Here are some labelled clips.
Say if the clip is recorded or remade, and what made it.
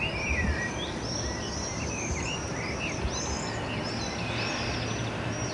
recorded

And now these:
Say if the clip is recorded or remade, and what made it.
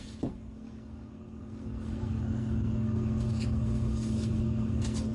remade, codec, SNAC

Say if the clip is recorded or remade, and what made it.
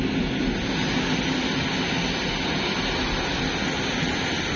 recorded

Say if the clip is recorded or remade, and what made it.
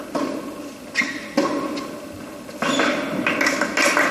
recorded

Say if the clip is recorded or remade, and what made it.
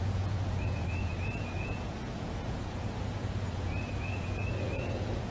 remade, vocoder, Vocos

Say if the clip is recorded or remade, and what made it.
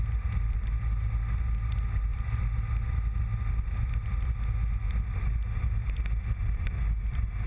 recorded